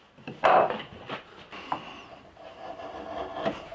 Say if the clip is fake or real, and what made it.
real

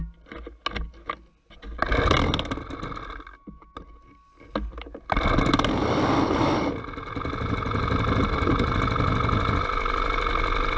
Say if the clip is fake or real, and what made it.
real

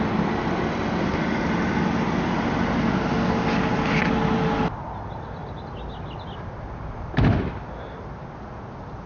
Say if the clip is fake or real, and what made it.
real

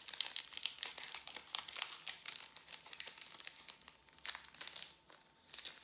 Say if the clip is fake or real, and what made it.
real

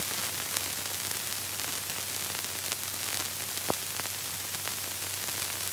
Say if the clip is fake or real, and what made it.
real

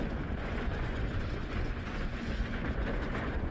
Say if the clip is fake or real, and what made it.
fake, vocoder, Vocos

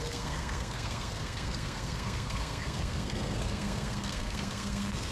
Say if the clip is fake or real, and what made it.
fake, codec, SNAC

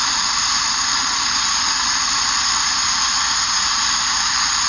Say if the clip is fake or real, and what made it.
fake, vocoder, BigVGAN v2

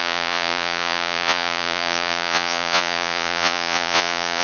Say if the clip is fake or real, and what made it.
fake, vocoder, Vocos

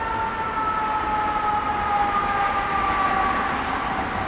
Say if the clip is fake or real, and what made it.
real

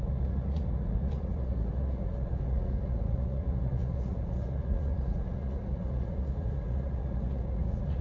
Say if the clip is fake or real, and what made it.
fake, vocoder, Vocos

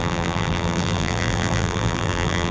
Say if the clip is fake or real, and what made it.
fake, vocoder, BigVGAN v2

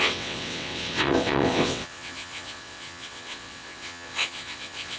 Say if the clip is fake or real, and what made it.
fake, vocoder, WaveNeXt